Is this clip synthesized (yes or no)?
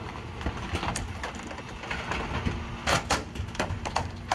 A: no